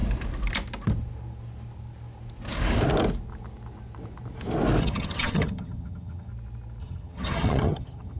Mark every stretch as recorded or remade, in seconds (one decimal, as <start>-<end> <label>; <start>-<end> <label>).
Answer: 0.0-4.8 recorded; 4.8-6.3 remade; 6.3-6.8 recorded; 6.8-8.2 remade